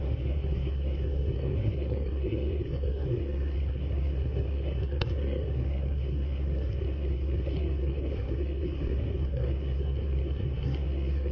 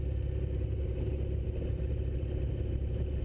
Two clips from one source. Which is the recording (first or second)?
second